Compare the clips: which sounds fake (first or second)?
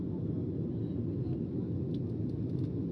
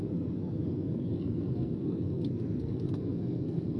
second